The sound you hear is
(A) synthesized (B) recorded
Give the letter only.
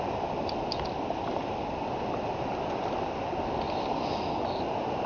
B